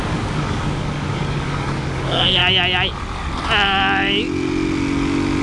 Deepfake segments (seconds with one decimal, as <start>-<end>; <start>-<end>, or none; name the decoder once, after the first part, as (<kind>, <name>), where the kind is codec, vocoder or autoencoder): 0.0-2.4 (codec, DAC)